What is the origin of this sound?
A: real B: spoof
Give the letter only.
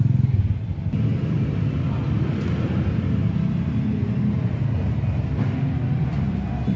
A